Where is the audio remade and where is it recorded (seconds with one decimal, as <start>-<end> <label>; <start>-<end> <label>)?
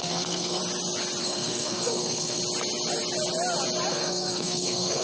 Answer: 0.0-0.6 remade; 0.6-1.2 recorded; 1.2-2.4 remade; 2.4-3.9 recorded; 3.9-5.0 remade